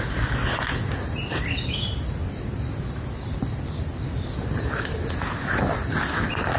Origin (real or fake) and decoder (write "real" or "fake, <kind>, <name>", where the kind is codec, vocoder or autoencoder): real